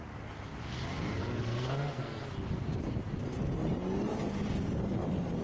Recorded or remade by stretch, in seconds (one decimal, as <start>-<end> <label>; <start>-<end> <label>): 0.0-0.9 recorded; 0.9-2.3 remade; 2.3-5.4 recorded